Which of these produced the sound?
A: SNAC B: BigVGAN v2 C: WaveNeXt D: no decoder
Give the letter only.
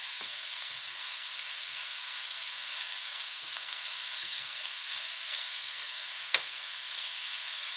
A